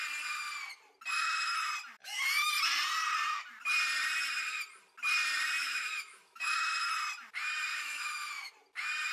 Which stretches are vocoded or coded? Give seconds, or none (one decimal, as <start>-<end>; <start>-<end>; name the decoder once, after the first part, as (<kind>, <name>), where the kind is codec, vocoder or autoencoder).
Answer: 5.6-6.5 (autoencoder, DAC-VAE); 7.7-8.5